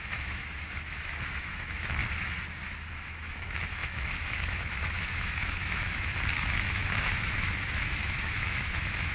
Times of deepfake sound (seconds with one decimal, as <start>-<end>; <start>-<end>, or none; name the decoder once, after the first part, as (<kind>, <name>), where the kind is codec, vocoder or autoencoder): 0.0-2.0 (autoencoder, DAC-VAE); 2.9-9.1